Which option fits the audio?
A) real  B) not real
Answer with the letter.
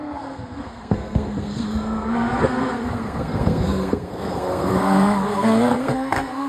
B